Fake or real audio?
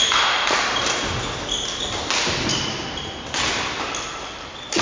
real